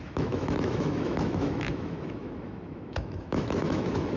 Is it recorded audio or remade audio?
remade